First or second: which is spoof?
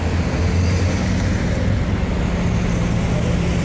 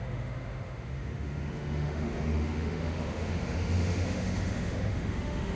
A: second